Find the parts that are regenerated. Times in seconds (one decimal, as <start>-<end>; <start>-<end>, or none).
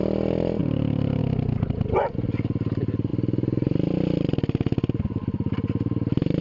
0.6-1.2; 3.1-3.9